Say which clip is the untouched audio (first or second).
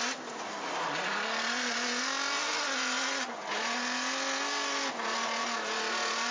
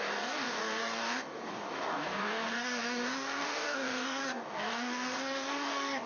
first